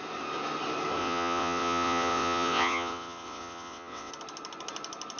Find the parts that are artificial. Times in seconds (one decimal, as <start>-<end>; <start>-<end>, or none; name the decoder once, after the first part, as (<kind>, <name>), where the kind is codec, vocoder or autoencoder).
1.0-4.1 (vocoder, WaveNeXt)